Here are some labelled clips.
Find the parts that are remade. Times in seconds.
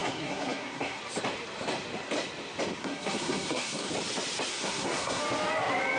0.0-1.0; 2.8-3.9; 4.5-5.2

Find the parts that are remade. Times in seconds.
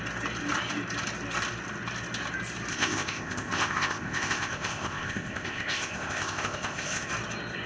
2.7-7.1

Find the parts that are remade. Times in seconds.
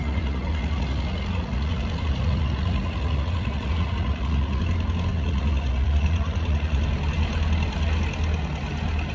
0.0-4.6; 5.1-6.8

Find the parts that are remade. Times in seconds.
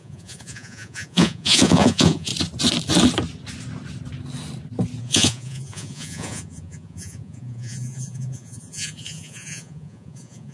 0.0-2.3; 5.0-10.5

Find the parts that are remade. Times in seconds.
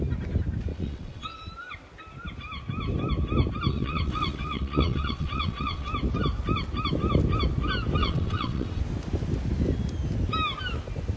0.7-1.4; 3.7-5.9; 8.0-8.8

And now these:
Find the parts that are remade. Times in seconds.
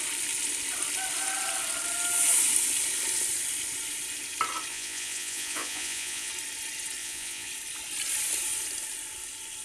4.7-6.3; 7.0-7.5